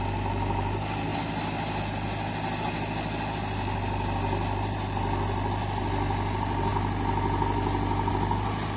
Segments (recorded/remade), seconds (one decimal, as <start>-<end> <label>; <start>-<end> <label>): 0.0-8.8 recorded